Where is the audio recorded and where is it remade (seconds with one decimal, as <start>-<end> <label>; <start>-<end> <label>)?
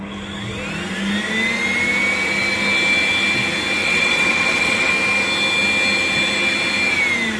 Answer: 0.0-3.8 recorded; 3.8-4.9 remade; 4.9-7.4 recorded